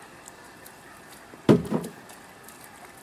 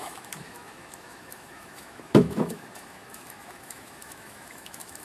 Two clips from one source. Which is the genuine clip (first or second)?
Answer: first